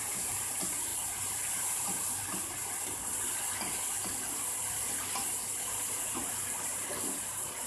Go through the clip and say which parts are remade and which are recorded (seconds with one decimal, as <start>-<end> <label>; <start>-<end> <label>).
0.0-0.9 remade; 0.9-1.7 recorded; 1.7-2.6 remade; 2.6-6.0 recorded; 6.0-7.7 remade